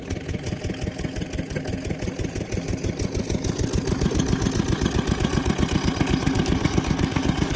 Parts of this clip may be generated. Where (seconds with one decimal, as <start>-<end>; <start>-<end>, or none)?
6.2-7.6